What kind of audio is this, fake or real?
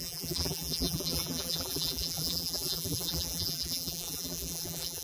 fake